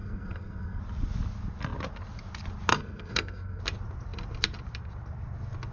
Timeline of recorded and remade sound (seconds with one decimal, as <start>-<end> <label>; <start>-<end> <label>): 0.0-0.8 remade; 0.8-2.7 recorded; 2.7-3.6 remade; 3.6-5.7 recorded